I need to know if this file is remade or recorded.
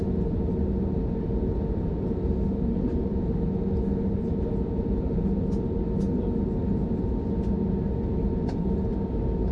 recorded